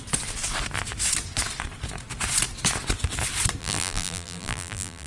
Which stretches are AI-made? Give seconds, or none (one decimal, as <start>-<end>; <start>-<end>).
3.6-5.1